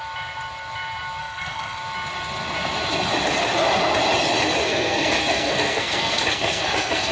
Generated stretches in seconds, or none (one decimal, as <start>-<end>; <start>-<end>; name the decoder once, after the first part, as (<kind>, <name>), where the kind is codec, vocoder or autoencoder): 1.2-1.8 (codec, SNAC); 4.6-7.1